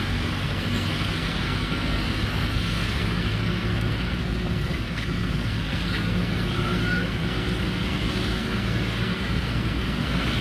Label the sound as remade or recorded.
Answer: remade